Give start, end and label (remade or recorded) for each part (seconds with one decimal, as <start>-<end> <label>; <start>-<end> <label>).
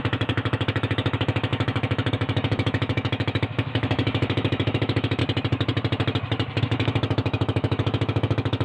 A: 0.0-5.2 remade; 5.2-6.6 recorded; 6.6-8.6 remade